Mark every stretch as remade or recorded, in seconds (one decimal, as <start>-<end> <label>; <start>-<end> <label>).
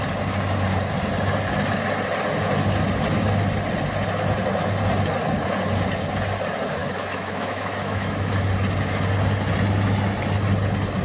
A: 0.0-6.8 recorded; 6.8-8.3 remade; 8.3-11.0 recorded